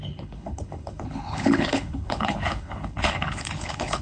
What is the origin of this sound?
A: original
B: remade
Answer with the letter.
B